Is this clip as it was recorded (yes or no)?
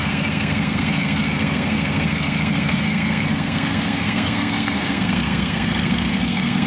no